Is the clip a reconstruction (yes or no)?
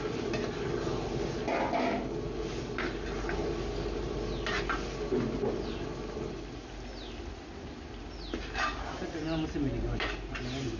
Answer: no